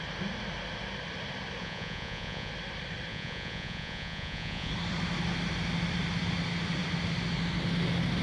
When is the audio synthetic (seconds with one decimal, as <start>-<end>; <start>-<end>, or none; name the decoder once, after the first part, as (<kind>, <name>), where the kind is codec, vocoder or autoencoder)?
1.6-2.5 (vocoder, Vocos); 3.1-4.7